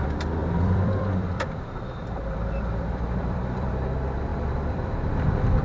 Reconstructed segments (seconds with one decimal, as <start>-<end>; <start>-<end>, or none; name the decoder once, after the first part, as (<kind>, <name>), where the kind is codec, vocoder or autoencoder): 0.4-3.7 (vocoder, BigVGAN v2); 4.3-5.1